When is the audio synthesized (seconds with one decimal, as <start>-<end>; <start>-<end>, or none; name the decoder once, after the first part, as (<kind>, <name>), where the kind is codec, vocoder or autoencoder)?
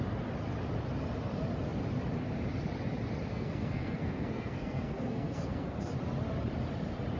3.3-5.9 (codec, SNAC)